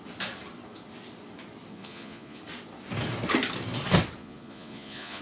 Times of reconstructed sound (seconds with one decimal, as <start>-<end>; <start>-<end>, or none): 1.7-2.4; 4.2-5.2